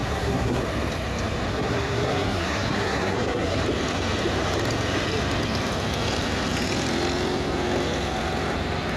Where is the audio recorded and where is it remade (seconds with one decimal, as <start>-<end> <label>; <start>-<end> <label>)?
0.0-0.6 remade; 0.6-1.5 recorded; 1.5-3.6 remade; 3.6-9.0 recorded